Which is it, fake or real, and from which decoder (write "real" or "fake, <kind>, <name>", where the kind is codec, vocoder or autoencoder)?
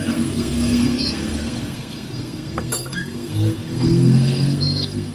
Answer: fake, codec, SNAC